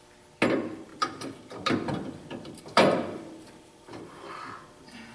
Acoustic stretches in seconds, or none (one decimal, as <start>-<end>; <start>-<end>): 0.0-0.9; 4.0-5.1